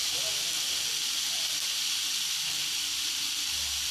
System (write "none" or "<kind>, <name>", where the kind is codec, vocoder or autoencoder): none